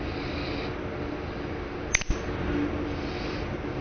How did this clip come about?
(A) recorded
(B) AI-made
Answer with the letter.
A